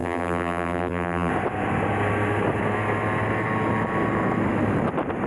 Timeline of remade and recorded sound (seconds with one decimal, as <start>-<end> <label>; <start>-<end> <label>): 0.0-1.3 remade; 1.3-5.3 recorded